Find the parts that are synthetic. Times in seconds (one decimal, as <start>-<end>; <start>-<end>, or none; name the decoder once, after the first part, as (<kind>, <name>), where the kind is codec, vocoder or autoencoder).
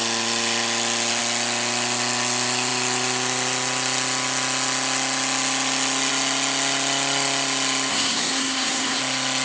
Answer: 7.9-9.0 (codec, SNAC)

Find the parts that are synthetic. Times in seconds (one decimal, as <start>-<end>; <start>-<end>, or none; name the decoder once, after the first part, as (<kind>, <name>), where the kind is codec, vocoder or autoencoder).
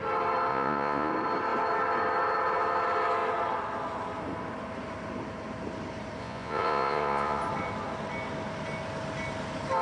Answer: 0.5-1.1 (vocoder, Vocos); 6.2-7.4